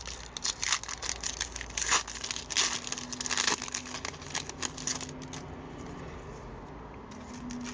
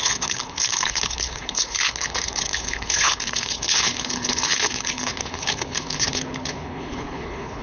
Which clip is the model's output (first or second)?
second